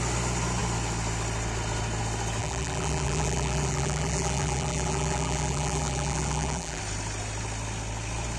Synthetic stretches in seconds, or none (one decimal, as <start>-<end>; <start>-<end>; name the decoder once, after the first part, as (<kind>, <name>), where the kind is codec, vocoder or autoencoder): 2.4-6.8 (vocoder, BigVGAN v2)